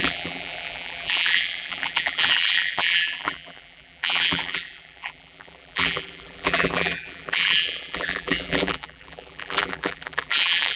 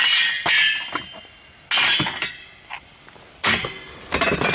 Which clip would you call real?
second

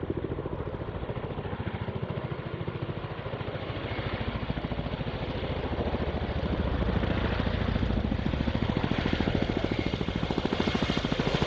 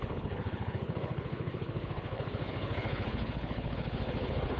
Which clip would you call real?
first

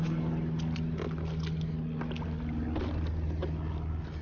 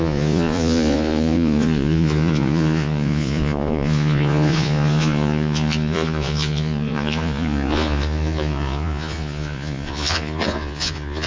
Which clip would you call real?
first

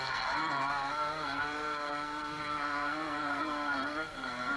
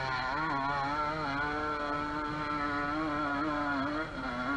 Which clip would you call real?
second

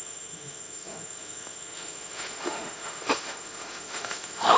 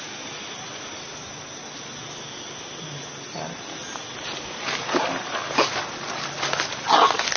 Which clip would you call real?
second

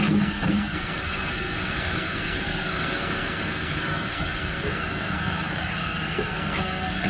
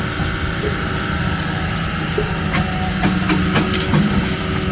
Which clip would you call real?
second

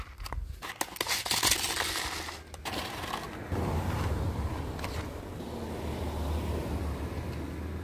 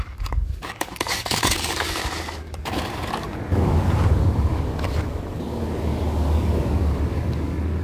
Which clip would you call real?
first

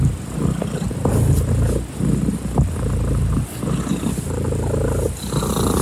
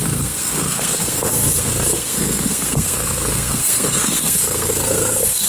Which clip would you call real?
first